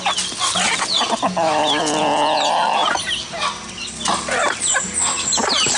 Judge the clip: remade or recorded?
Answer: recorded